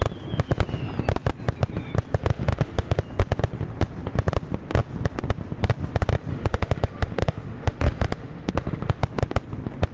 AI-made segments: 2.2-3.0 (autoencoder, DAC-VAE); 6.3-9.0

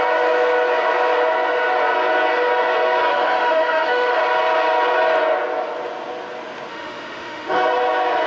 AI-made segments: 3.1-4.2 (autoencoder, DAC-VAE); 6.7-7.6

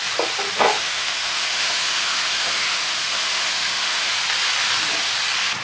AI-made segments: 0.7-4.1 (autoencoder, DAC-VAE)